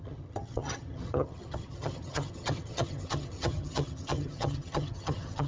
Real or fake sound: fake